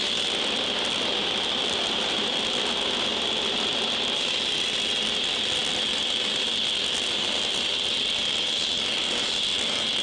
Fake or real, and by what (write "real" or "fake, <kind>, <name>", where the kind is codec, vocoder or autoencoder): real